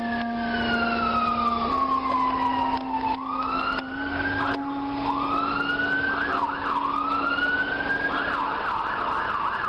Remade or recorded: recorded